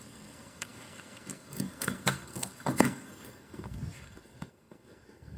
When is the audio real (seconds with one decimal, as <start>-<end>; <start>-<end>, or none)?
none